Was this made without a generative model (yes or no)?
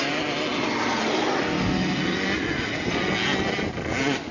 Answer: yes